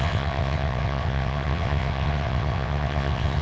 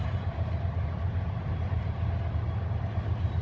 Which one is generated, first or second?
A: first